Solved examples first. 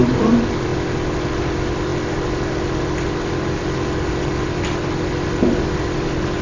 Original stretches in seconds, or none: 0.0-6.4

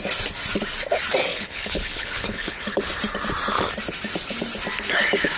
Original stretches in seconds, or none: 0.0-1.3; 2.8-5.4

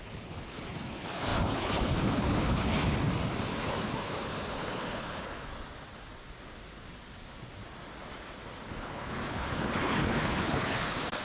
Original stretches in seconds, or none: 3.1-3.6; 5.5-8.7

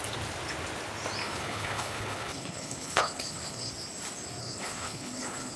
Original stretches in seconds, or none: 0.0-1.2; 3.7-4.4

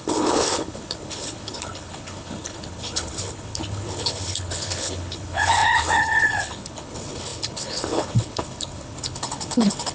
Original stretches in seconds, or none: none

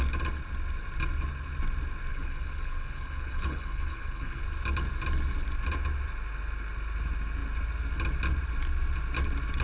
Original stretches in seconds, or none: 0.0-2.1; 4.4-9.6